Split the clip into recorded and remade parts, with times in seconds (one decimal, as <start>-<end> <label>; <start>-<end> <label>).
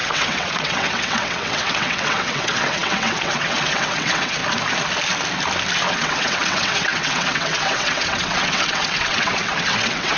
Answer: 0.0-4.4 remade; 4.4-5.9 recorded; 5.9-10.2 remade